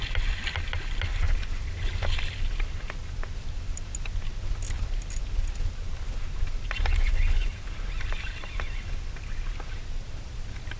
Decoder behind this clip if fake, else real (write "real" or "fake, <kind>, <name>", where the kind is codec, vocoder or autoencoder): real